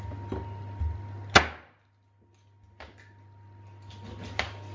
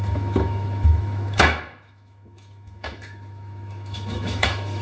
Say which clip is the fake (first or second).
second